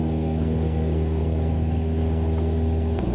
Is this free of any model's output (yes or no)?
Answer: no